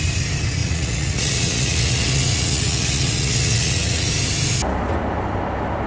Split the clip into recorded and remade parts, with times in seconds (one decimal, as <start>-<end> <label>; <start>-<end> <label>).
0.0-0.6 recorded; 0.6-4.1 remade; 4.1-5.9 recorded